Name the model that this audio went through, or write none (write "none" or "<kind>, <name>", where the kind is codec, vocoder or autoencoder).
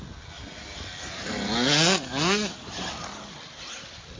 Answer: none